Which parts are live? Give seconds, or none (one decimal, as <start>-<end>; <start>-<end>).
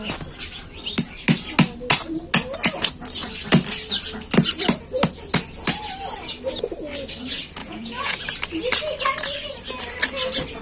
0.0-7.6; 8.2-10.6